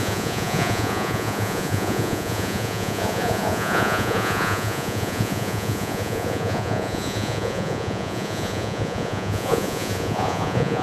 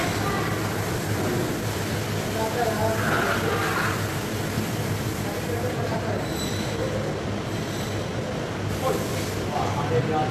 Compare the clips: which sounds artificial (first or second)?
first